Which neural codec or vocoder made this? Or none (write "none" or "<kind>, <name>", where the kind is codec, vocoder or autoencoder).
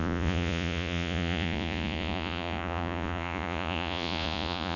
vocoder, Vocos